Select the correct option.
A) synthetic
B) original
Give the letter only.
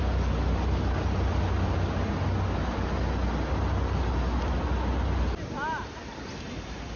B